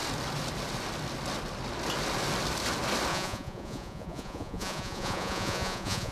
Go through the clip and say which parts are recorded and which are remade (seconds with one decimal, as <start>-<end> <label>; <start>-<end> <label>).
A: 0.0-3.1 recorded; 3.1-6.1 remade